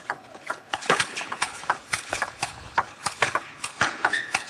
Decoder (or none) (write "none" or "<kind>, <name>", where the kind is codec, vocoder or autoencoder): codec, HILCodec